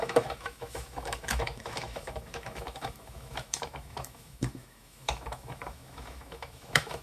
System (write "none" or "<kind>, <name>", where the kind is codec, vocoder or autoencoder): autoencoder, DAC-VAE